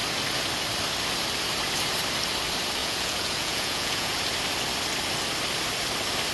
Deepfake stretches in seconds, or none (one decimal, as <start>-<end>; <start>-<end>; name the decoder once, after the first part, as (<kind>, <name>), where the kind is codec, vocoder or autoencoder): 2.8-4.2 (vocoder, Vocos)